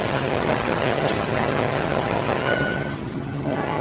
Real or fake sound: fake